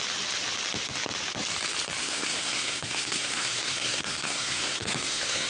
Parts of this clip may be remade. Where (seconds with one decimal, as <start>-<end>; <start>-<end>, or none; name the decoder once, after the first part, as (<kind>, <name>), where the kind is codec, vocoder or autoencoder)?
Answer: 2.0-5.5 (codec, SNAC)